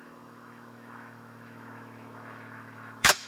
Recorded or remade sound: remade